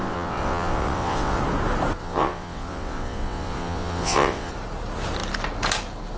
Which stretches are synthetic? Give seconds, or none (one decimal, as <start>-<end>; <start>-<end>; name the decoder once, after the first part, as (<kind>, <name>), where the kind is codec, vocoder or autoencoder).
0.0-1.4 (vocoder, WaveNeXt); 2.0-4.5